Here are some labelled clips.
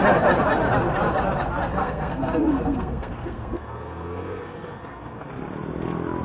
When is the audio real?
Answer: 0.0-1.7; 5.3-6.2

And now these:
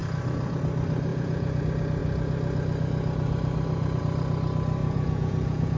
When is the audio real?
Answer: 0.0-1.1; 1.6-4.8

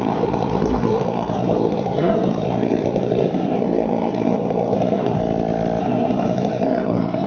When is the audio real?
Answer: 5.2-5.8

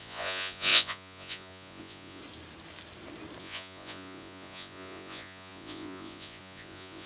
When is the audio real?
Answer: 2.2-3.4

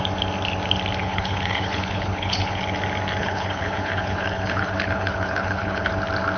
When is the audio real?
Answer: 0.0-1.0; 2.6-3.2; 5.9-6.4